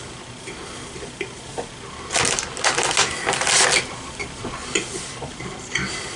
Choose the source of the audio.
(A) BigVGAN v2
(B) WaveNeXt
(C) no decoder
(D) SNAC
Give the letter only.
C